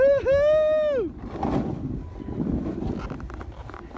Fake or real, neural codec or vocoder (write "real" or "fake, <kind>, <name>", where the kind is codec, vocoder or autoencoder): real